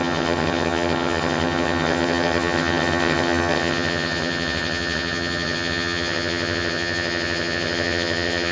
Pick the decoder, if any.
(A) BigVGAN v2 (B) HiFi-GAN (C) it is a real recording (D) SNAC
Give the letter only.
B